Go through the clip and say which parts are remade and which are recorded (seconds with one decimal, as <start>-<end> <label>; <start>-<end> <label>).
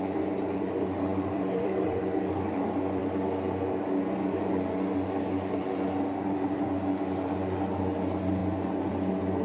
0.0-1.1 recorded; 1.1-2.0 remade; 2.0-9.4 recorded